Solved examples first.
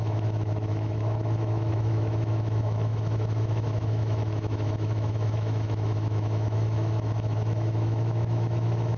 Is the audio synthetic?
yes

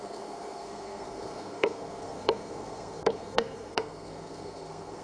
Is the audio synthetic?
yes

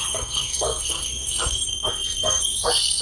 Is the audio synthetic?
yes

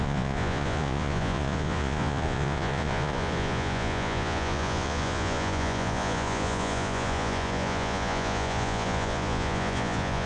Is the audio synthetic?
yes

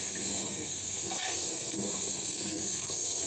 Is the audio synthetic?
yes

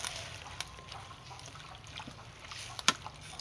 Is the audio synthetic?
no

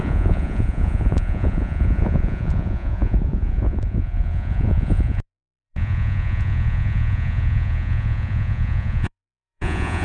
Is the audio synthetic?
yes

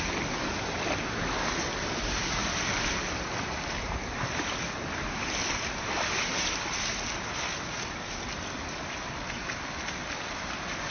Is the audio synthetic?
no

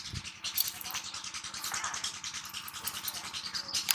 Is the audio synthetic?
yes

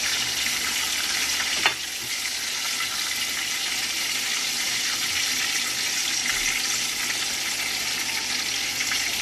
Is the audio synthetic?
no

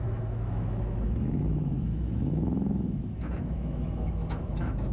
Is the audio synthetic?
yes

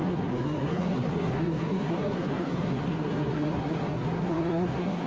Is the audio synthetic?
yes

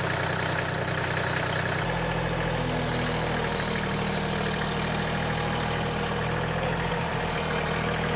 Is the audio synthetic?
no